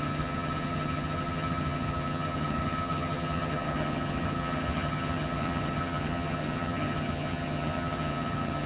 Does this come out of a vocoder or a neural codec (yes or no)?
yes